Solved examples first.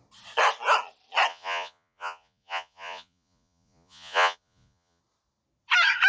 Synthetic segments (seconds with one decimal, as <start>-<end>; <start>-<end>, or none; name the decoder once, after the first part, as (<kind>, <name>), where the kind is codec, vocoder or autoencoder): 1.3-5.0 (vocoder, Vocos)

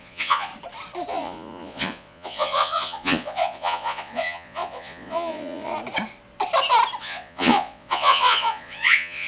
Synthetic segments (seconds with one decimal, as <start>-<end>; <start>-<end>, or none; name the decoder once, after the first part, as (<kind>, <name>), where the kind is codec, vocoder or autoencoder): 0.0-0.5 (vocoder, Vocos); 1.1-5.7; 7.0-9.3

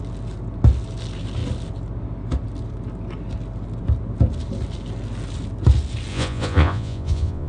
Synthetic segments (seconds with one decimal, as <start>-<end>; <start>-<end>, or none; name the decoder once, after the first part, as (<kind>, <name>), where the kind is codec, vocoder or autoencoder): 6.1-7.5 (vocoder, Vocos)

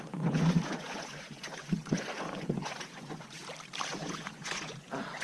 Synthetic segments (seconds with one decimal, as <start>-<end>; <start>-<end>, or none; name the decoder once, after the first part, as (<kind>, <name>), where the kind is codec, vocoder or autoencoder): 0.0-3.4 (vocoder, Vocos); 3.9-5.2

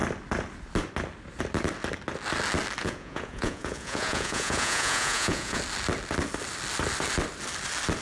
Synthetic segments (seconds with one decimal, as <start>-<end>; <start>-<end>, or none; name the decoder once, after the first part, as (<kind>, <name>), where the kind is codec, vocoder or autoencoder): 2.8-5.6 (vocoder, Vocos)

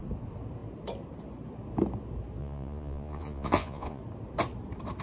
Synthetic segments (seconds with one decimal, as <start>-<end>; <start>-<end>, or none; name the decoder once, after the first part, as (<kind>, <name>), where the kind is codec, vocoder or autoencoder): 2.4-4.0 (vocoder, Vocos)